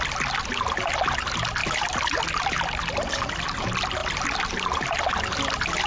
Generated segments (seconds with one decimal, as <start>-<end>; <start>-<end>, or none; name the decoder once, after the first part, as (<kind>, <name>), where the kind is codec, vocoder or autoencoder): 4.0-5.9 (vocoder, BigVGAN v2)